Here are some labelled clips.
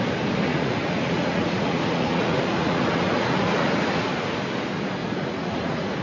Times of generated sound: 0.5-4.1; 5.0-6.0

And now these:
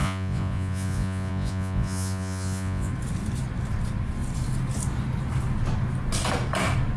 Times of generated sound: 0.0-2.9